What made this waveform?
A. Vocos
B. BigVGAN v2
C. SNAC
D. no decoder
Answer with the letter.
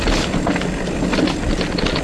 D